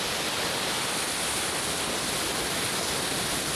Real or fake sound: real